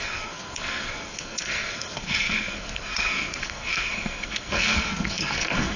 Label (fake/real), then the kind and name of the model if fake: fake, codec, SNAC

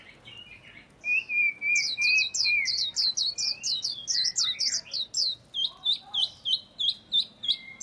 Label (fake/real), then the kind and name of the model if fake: real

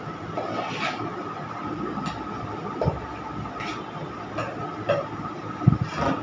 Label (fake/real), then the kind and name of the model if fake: real